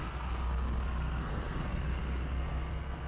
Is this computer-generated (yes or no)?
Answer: yes